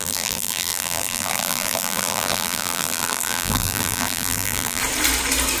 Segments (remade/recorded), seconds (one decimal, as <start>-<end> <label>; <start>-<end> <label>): 0.0-4.8 remade; 4.8-5.6 recorded